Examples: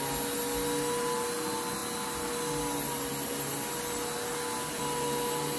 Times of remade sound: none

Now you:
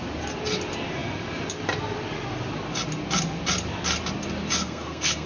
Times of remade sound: 4.6-5.3 (codec, SNAC)

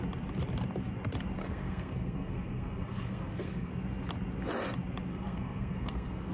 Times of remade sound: 1.4-3.7 (codec, SNAC); 5.1-6.3